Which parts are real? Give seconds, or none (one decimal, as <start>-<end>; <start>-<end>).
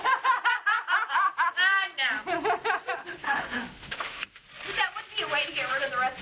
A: 0.0-3.0; 4.4-6.2